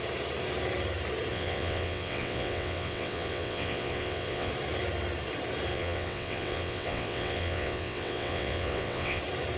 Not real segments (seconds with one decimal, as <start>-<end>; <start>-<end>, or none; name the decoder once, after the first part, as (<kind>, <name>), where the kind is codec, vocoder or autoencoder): 1.3-4.5 (vocoder, WaveNeXt); 5.7-9.2